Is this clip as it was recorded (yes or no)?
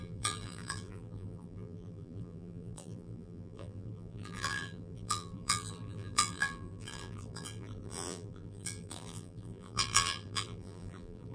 no